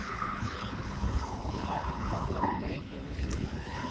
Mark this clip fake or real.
fake